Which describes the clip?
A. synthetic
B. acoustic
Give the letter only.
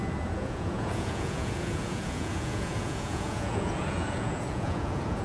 A